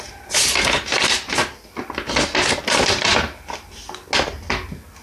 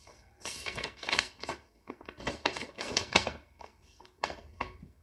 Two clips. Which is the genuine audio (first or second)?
first